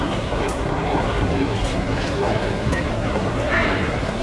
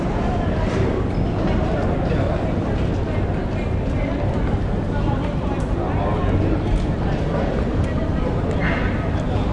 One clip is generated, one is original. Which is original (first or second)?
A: second